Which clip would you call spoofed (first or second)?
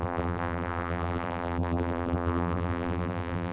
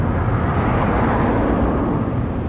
first